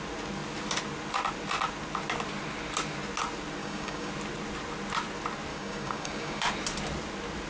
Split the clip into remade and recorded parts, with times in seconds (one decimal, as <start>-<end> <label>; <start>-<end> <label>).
0.0-3.6 recorded; 3.6-4.1 remade; 4.1-5.5 recorded; 5.5-6.4 remade; 6.4-7.5 recorded